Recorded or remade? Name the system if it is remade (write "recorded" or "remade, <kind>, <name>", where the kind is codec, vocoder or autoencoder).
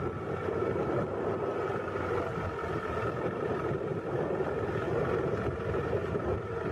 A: remade, vocoder, BigVGAN v2